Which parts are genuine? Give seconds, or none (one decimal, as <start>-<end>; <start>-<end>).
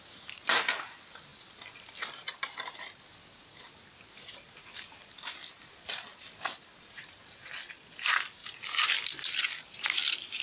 0.0-10.4